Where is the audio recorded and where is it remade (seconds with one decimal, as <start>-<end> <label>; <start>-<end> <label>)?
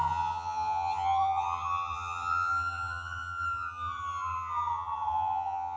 0.0-5.8 remade